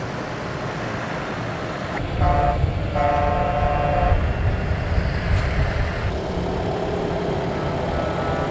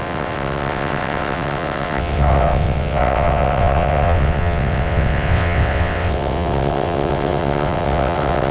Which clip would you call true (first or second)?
first